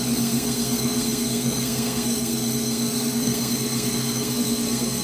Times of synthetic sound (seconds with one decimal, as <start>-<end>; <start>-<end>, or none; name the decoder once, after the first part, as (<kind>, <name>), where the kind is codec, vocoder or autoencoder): 0.0-5.0 (codec, SNAC)